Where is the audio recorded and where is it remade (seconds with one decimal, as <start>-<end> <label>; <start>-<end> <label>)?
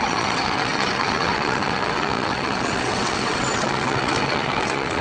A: 0.0-5.0 remade